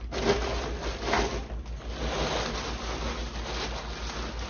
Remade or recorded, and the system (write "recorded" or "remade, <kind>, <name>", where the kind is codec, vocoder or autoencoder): recorded